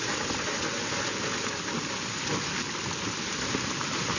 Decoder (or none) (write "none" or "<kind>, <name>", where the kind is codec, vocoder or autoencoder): none